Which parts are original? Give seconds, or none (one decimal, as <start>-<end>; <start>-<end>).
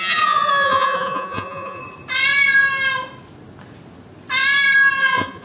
1.8-5.0